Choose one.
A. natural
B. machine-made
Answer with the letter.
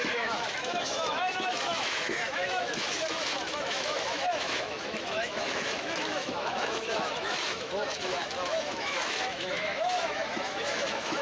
B